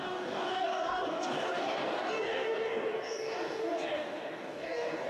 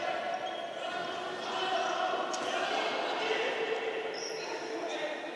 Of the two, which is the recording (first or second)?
second